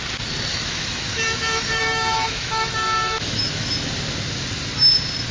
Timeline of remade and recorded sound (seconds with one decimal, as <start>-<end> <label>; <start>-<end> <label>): 0.0-0.5 recorded; 0.5-3.7 remade; 3.7-5.3 recorded